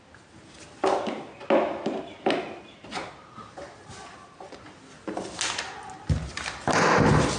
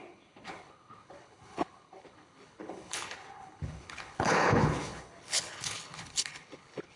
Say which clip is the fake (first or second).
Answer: second